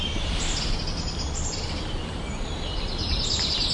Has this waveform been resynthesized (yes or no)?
no